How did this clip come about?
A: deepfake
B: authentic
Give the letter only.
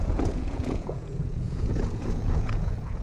A